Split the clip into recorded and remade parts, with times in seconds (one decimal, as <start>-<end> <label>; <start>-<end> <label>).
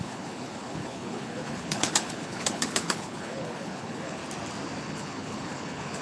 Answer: 0.0-4.2 remade; 4.2-4.8 recorded; 4.8-6.0 remade